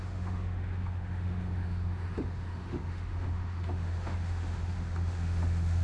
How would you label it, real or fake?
fake